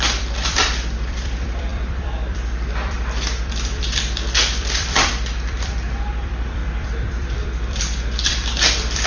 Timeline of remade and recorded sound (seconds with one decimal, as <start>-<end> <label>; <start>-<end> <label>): 0.0-9.1 remade